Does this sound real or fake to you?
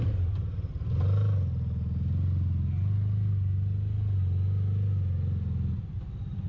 real